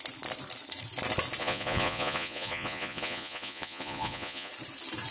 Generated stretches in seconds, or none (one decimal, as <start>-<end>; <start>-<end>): 1.4-4.5